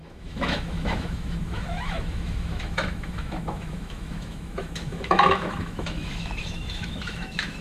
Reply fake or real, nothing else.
fake